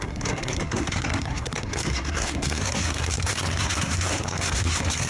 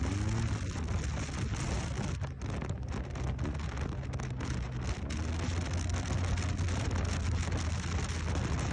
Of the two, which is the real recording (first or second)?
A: second